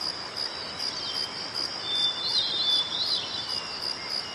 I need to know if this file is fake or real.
real